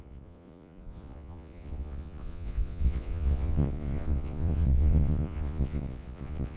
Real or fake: fake